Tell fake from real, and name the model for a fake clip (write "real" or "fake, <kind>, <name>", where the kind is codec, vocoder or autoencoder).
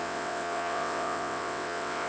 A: fake, vocoder, WaveNeXt